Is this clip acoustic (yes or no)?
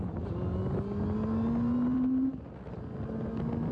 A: yes